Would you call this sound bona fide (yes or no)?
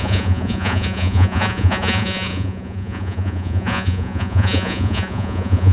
no